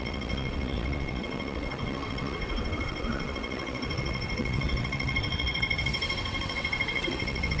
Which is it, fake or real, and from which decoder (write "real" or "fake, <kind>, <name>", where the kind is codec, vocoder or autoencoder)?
fake, vocoder, WaveNeXt